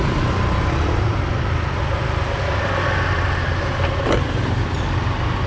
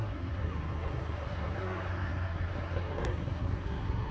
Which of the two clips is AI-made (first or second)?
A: second